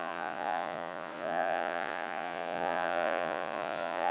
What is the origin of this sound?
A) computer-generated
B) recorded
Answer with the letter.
A